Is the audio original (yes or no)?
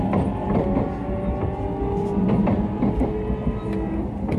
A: yes